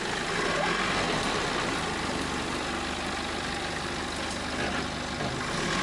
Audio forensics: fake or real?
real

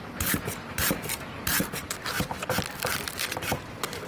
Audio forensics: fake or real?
real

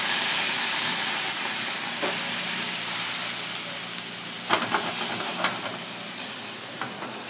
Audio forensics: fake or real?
real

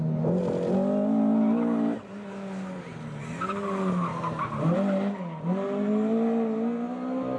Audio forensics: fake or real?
real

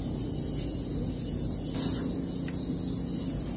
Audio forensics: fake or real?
real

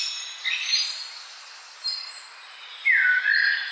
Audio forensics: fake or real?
real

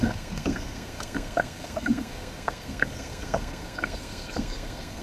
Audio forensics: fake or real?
fake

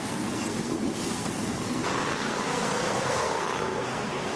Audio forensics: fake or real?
fake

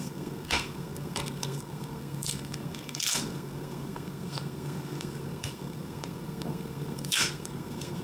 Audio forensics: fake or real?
fake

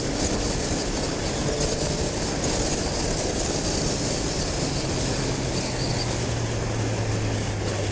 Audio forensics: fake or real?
real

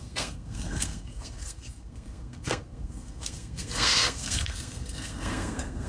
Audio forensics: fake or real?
fake